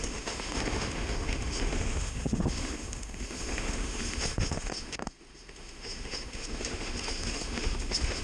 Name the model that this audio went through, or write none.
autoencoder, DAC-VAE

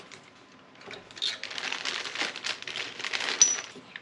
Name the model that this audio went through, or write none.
none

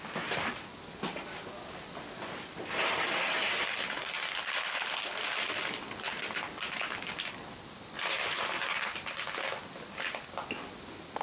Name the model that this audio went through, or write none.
none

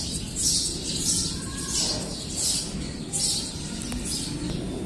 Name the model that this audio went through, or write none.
none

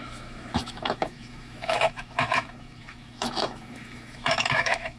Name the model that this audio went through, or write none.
autoencoder, DAC-VAE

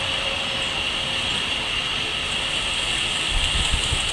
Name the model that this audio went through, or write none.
none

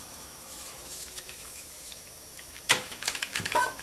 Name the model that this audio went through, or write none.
autoencoder, DAC-VAE